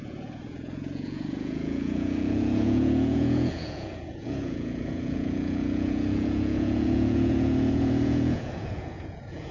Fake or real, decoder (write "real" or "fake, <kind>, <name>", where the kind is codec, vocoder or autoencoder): fake, vocoder, Vocos